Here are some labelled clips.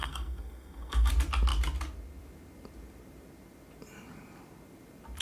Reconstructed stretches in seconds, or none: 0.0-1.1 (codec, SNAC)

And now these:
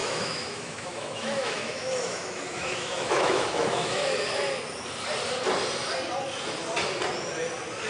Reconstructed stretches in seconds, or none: 0.0-4.6 (autoencoder, DAC-VAE)

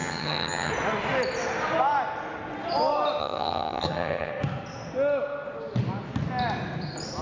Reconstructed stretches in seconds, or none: 0.0-0.7 (vocoder, HiFi-GAN); 3.2-4.3

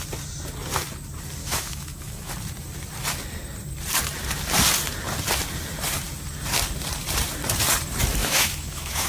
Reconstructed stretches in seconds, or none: 1.4-2.3 (autoencoder, DAC-VAE); 8.2-9.1

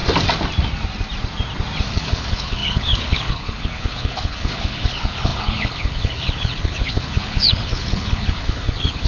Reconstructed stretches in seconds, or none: 1.9-9.1 (codec, HILCodec)